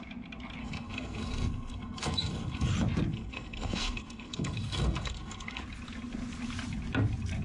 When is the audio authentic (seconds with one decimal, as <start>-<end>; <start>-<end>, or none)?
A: 0.0-0.6; 2.7-3.1; 5.6-7.4